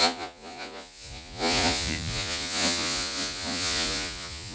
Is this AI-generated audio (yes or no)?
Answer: yes